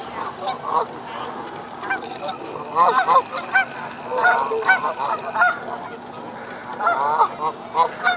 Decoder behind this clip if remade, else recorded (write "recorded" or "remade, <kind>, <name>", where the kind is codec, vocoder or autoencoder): recorded